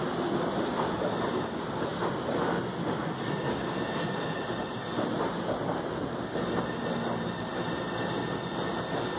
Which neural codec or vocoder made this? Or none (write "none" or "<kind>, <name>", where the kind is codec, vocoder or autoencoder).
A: none